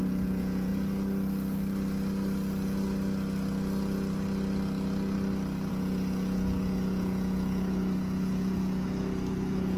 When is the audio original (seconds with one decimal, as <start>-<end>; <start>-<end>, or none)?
0.7-5.7